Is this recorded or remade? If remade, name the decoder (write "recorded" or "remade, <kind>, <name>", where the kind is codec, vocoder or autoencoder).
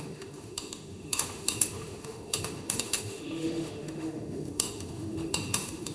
remade, autoencoder, DAC-VAE